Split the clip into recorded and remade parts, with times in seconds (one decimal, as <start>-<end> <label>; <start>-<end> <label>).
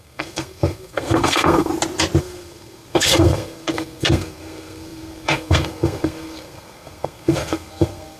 0.0-1.7 remade; 1.7-2.2 recorded; 2.2-8.2 remade